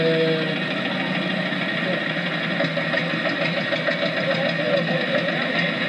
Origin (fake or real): real